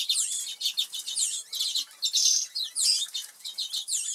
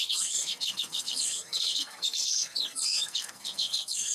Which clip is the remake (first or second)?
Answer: second